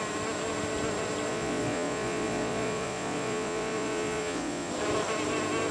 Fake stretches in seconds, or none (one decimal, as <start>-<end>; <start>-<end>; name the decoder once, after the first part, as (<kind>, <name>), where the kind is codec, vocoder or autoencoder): 1.3-4.7 (vocoder, Vocos)